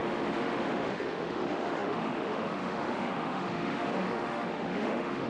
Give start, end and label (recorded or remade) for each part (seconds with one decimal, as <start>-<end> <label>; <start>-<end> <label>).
0.0-5.3 remade